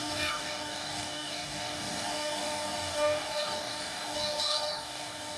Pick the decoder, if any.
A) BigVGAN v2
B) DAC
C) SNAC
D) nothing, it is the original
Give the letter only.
B